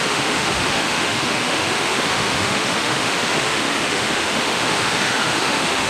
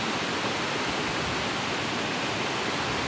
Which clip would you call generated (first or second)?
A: first